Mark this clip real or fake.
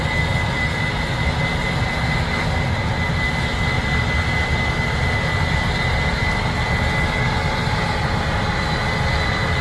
real